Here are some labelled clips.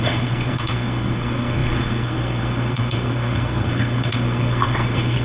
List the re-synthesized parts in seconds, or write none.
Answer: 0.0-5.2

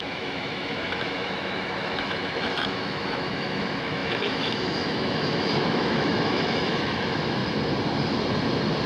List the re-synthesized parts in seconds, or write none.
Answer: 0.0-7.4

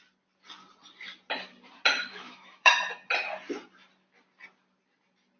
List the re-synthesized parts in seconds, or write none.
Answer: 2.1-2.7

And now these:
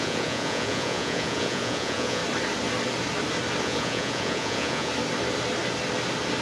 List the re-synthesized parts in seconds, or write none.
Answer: 0.0-2.2; 3.6-4.9

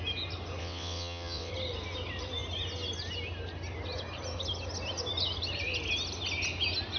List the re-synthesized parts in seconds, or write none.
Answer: 0.6-1.5